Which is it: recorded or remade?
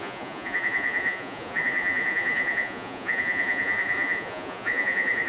remade